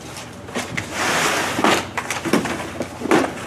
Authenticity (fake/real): real